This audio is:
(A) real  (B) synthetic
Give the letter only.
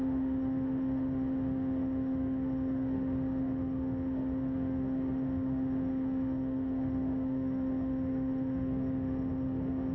B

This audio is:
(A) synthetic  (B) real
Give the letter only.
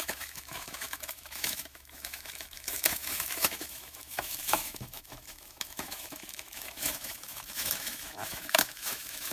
A